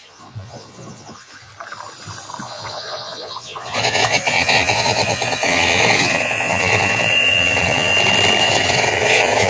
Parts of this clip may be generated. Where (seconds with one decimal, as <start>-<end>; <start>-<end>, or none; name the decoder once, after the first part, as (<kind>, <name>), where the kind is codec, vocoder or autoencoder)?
0.0-1.5 (vocoder, Vocos); 2.4-7.9; 8.4-9.5